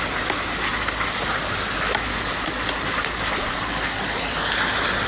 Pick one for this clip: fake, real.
real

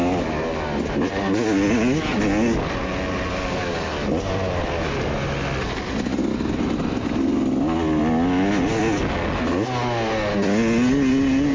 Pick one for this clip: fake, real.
real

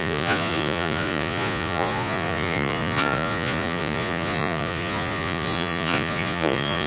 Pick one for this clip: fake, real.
fake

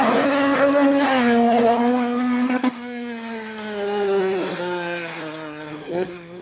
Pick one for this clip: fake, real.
fake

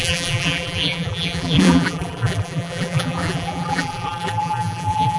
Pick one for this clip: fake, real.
fake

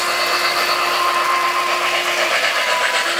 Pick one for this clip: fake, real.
real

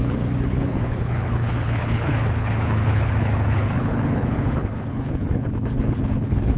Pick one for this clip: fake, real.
fake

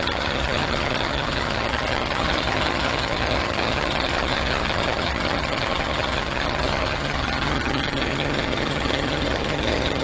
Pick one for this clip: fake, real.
fake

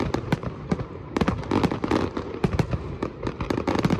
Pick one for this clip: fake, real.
real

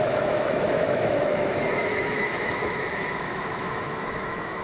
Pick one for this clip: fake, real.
fake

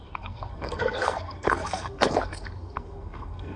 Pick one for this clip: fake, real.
fake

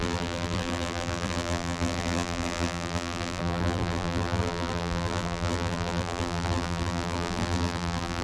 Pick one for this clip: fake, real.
fake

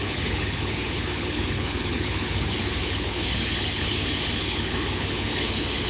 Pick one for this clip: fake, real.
fake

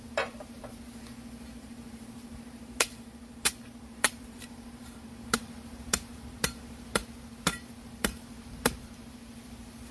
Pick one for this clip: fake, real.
fake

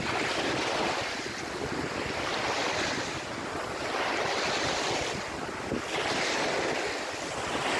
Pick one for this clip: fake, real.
real